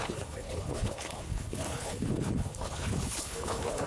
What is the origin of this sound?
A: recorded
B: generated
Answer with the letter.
B